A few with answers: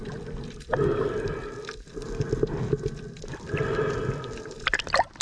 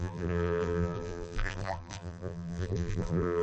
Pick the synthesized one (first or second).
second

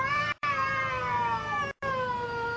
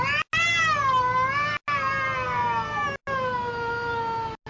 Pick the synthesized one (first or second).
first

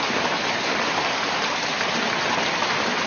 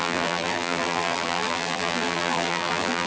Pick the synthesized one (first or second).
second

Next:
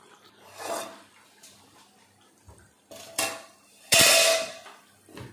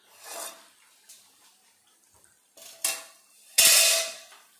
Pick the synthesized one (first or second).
first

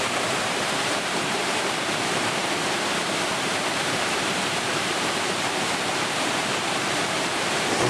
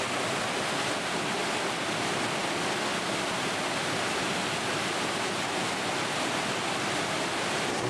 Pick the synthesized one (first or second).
first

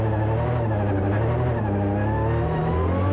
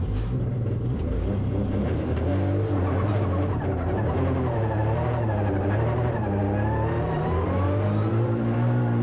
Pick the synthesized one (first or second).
second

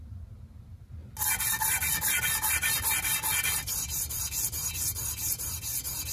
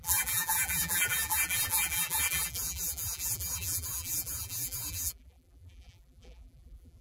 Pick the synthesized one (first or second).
second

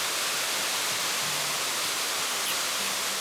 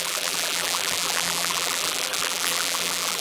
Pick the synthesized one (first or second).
second